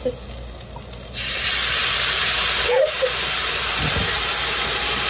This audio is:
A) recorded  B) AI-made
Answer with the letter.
A